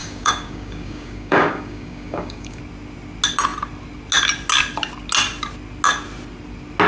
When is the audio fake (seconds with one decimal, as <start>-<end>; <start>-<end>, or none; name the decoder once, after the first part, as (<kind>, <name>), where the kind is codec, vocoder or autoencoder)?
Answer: 0.0-2.6 (codec, DAC)